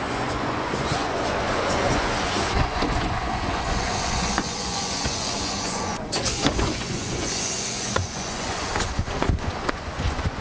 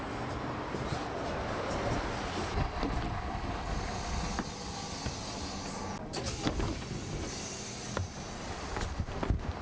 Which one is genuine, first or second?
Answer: second